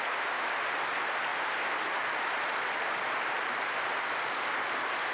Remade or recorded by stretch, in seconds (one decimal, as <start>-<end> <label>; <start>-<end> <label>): 0.0-5.1 recorded